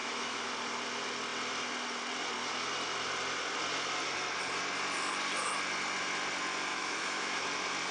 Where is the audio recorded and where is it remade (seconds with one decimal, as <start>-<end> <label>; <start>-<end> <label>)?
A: 0.0-0.5 remade; 0.5-6.7 recorded; 6.7-7.4 remade; 7.4-7.9 recorded